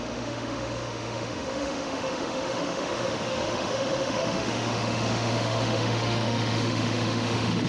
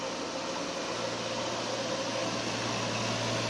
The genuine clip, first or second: second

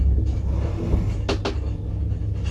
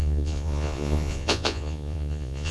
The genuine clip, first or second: first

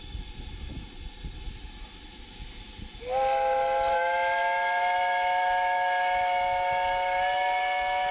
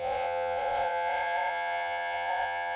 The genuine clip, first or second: first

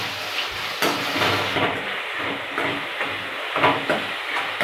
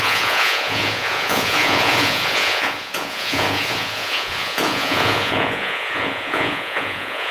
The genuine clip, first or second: first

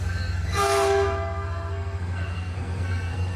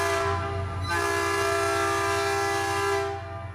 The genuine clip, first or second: second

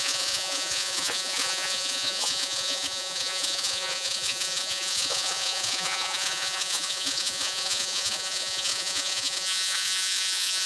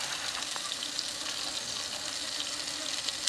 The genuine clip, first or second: second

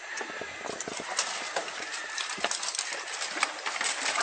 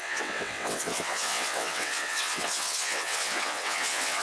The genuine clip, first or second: first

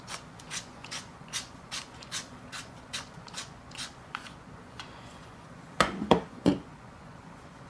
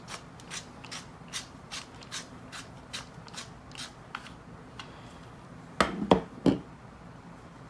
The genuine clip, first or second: second